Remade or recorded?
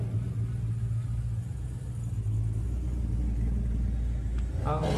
recorded